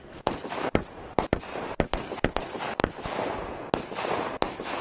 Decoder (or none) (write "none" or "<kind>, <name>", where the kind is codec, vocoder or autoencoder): none